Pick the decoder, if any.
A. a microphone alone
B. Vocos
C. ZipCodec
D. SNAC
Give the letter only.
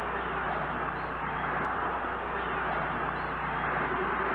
A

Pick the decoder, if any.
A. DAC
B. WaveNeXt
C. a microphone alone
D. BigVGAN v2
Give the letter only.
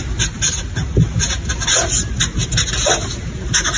C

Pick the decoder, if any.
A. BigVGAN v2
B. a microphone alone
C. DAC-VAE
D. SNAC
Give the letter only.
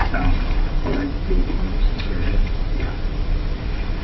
B